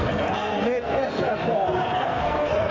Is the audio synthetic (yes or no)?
yes